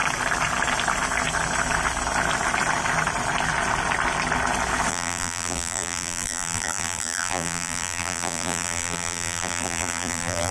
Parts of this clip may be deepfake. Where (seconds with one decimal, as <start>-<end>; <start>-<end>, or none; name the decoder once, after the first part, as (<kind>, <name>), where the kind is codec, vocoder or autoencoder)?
4.9-10.5 (vocoder, BigVGAN v2)

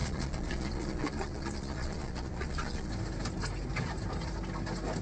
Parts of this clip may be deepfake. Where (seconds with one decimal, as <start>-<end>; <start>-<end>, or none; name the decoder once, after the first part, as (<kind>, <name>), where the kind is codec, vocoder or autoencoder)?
0.0-2.9 (vocoder, Vocos)

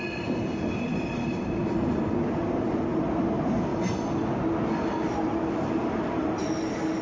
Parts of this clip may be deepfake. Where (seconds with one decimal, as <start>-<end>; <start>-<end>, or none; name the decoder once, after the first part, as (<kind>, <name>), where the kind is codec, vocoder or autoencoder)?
none